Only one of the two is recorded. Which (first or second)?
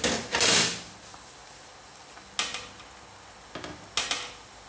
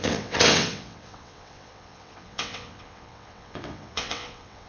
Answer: first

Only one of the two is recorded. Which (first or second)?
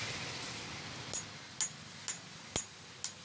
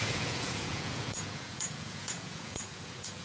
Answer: first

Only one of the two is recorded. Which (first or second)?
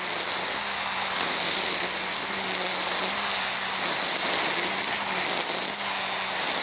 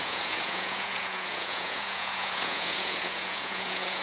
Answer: first